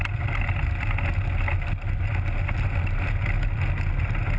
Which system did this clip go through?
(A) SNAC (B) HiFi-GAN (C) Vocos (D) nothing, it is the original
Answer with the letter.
D